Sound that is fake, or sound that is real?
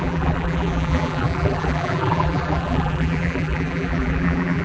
fake